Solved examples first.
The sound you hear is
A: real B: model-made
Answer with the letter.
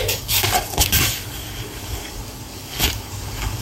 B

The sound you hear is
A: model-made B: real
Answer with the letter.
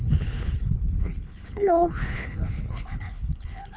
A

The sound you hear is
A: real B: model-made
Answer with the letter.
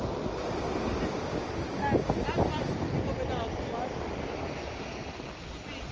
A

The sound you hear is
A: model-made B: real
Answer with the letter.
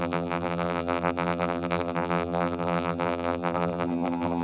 A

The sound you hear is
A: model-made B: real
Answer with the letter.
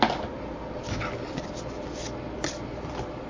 B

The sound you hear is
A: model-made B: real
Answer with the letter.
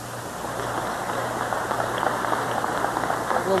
B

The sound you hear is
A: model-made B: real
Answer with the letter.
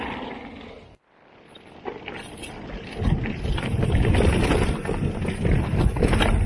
B